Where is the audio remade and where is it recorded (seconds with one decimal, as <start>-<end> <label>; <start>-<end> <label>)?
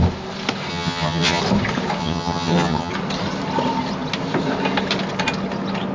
0.0-0.7 recorded; 0.7-1.4 remade; 1.4-2.0 recorded; 2.0-2.9 remade; 2.9-5.9 recorded